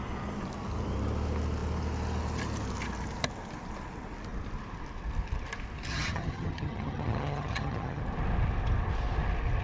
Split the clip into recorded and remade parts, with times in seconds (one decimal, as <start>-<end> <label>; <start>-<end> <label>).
0.0-5.9 recorded; 5.9-8.0 remade; 8.0-9.6 recorded